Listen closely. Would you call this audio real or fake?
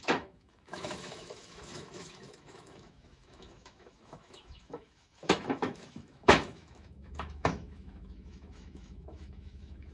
fake